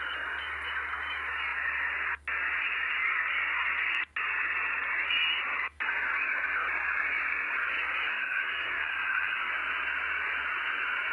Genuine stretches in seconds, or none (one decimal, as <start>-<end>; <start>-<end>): 0.0-8.1; 9.5-11.1